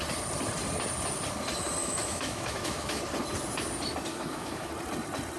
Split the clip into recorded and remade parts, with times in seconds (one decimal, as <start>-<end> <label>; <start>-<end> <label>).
0.0-1.8 recorded; 1.8-3.0 remade; 3.0-4.1 recorded; 4.1-4.7 remade; 4.7-5.4 recorded